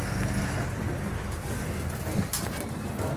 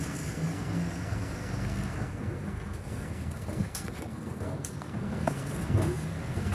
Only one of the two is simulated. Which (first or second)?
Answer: second